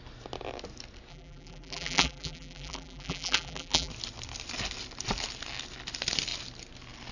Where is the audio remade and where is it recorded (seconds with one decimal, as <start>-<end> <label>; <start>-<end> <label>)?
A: 0.0-1.1 recorded; 1.1-3.9 remade; 3.9-7.1 recorded